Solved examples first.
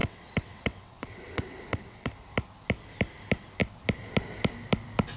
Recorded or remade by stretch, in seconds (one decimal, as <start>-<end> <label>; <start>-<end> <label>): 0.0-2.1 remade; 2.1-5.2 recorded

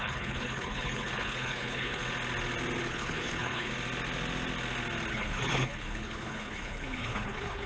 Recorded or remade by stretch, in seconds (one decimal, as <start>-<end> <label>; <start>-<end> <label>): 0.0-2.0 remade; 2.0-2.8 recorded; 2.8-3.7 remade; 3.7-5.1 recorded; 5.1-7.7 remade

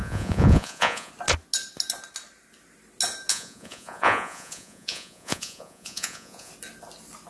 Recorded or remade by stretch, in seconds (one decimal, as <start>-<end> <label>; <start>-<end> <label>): 0.0-1.1 remade; 1.1-3.3 recorded; 3.3-6.5 remade; 6.5-7.3 recorded